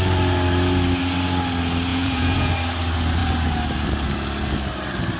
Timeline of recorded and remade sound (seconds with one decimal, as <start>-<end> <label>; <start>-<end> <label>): 0.0-1.9 recorded; 1.9-2.5 remade; 2.5-5.2 recorded